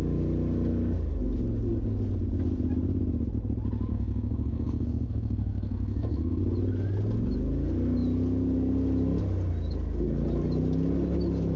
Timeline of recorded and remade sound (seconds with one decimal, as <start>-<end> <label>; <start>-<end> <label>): 0.0-3.9 recorded; 3.9-6.4 remade; 6.4-11.6 recorded